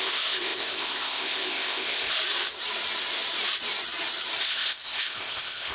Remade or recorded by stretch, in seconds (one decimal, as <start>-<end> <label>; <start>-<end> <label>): 0.0-2.2 remade; 2.2-4.4 recorded; 4.4-5.7 remade